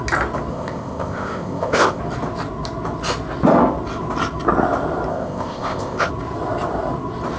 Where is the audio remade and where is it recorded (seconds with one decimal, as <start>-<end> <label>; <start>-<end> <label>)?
0.0-0.5 recorded; 0.5-2.0 remade; 2.0-5.1 recorded; 5.1-6.1 remade; 6.1-7.4 recorded